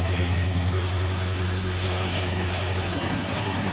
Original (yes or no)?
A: no